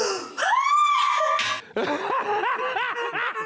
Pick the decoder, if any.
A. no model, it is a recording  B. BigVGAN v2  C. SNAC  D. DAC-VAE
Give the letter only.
A